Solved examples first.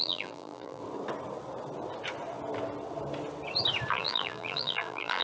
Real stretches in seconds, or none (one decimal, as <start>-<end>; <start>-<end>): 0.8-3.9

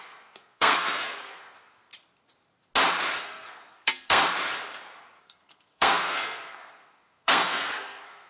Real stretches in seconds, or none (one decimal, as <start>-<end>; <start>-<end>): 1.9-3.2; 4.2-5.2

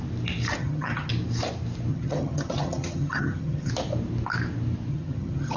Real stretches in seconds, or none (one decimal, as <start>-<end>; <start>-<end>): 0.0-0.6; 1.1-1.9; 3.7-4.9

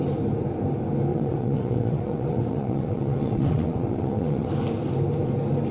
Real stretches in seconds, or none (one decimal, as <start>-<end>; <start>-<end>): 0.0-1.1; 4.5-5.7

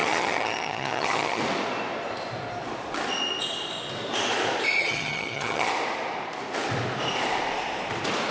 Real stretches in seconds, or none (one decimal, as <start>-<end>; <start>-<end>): 1.4-4.8; 5.7-8.3